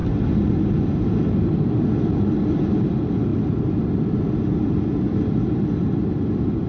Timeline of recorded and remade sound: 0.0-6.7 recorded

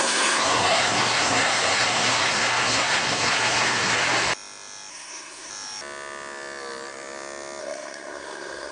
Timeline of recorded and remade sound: 0.0-4.0 remade; 4.0-4.9 recorded; 4.9-5.5 remade; 5.5-7.6 recorded; 7.6-8.7 remade

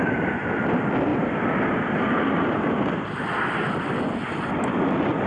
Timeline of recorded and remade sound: 0.0-5.3 recorded

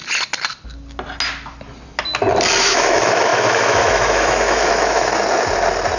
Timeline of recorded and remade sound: 0.0-2.6 recorded; 2.6-5.1 remade; 5.1-6.0 recorded